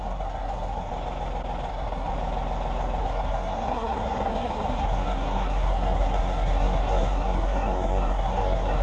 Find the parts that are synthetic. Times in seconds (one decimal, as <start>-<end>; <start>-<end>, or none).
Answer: 0.0-0.9; 1.7-2.1; 3.0-8.8